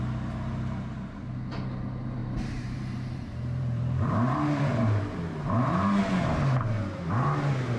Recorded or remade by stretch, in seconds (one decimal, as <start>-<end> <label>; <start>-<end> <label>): 0.0-2.2 recorded; 2.2-6.0 remade; 6.0-7.8 recorded